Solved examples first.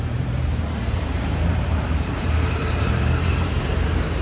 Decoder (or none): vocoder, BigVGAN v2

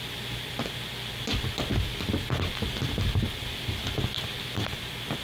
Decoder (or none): none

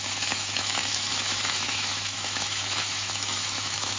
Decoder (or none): autoencoder, DAC-VAE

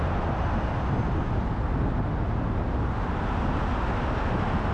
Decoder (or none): none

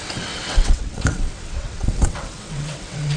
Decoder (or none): vocoder, WaveNeXt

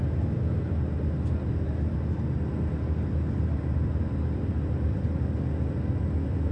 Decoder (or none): none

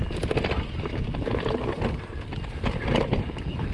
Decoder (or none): none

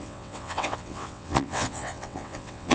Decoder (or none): vocoder, WaveNeXt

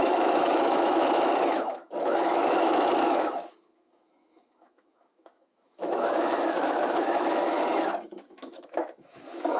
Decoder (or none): autoencoder, DAC-VAE